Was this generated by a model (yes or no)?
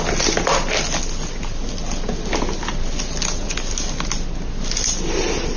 no